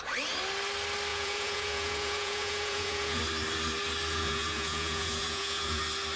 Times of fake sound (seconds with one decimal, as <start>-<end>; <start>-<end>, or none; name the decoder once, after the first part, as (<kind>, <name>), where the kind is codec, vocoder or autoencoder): 1.1-3.2 (vocoder, Vocos); 4.1-5.8